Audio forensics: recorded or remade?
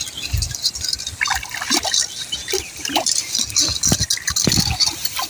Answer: recorded